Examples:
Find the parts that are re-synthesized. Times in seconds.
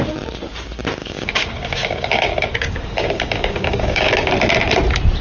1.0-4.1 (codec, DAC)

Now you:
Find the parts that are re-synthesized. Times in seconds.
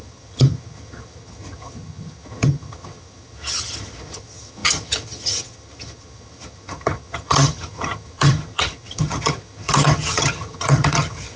0.0-11.4 (vocoder, HiFi-GAN)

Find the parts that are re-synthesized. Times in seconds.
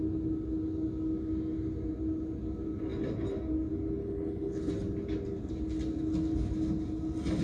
4.0-4.7 (codec, HILCodec)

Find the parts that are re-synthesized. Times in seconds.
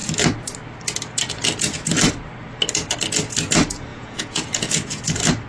3.9-5.0 (vocoder, Vocos)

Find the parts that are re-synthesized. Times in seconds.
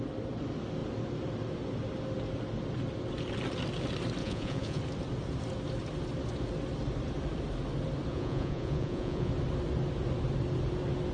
4.2-4.8 (vocoder, Vocos); 8.1-9.3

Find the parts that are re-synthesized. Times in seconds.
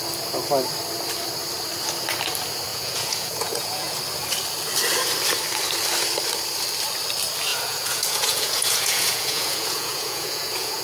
2.7-4.0 (vocoder, Vocos); 7.5-10.8